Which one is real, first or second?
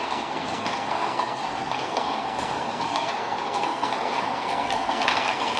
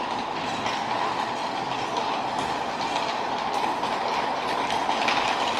second